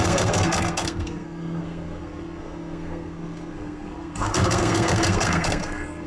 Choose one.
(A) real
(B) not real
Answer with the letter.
B